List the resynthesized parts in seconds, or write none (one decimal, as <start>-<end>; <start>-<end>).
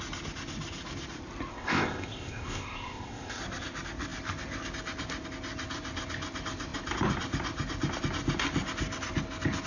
1.5-3.4